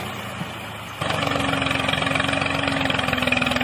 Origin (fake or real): real